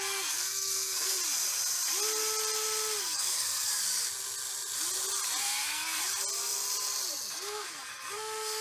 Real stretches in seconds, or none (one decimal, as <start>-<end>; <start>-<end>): 1.2-3.0; 3.7-5.4; 6.0-7.3